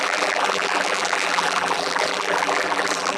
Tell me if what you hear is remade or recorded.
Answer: remade